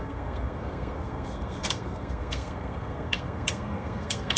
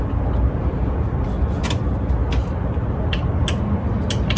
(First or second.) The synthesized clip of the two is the first